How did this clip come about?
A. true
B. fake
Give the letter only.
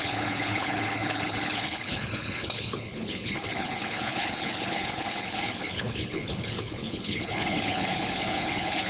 B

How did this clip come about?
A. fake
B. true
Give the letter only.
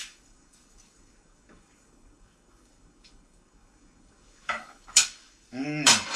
A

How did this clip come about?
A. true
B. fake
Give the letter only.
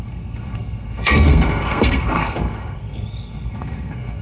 B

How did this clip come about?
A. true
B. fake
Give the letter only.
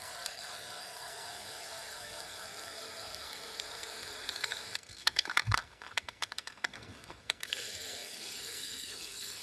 B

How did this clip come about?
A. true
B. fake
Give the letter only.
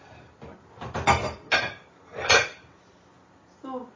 A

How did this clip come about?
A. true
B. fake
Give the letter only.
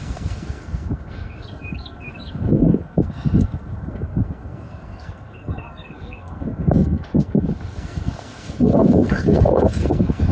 B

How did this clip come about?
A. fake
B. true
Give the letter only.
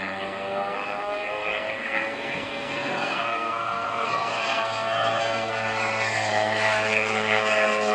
A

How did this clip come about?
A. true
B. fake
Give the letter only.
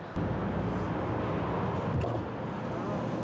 A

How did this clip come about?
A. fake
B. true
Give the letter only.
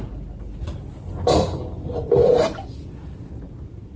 B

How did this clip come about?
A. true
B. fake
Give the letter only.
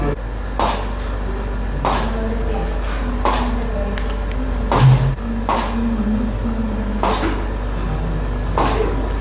A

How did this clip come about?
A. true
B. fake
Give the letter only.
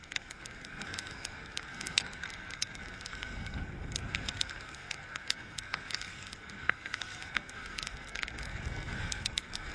B